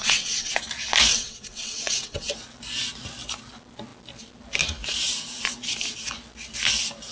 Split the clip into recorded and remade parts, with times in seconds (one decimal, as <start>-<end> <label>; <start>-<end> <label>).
0.0-0.5 remade; 0.5-1.1 recorded; 1.1-2.3 remade; 2.3-7.1 recorded

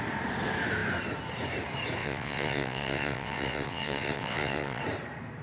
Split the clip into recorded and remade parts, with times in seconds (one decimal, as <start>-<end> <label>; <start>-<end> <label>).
0.0-2.0 recorded; 2.0-4.8 remade; 4.8-5.4 recorded

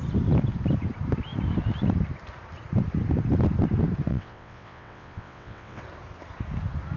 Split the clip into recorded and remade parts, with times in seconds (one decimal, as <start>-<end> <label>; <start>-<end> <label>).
0.0-4.1 recorded; 4.1-5.8 remade; 5.8-7.0 recorded

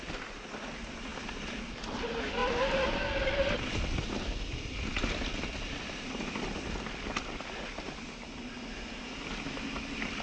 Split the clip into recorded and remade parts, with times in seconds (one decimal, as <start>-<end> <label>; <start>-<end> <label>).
0.0-10.2 recorded

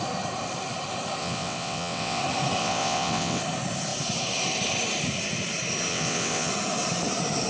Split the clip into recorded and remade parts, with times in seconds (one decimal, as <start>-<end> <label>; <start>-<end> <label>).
0.0-1.2 recorded; 1.2-2.2 remade; 2.2-2.6 recorded; 2.6-3.4 remade; 3.4-5.9 recorded; 5.9-6.5 remade; 6.5-7.5 recorded